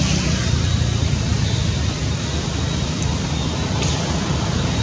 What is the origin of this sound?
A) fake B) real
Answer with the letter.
B